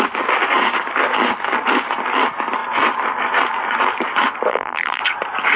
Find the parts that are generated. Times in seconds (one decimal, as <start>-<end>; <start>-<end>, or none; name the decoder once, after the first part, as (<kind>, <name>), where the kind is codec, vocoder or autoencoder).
4.5-5.0 (vocoder, BigVGAN v2)